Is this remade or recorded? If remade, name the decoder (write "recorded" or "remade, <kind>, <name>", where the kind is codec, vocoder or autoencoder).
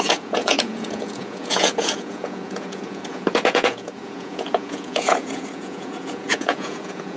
remade, vocoder, Vocos